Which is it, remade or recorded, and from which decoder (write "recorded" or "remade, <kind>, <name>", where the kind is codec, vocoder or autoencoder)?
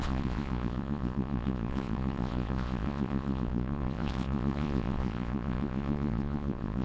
remade, vocoder, Vocos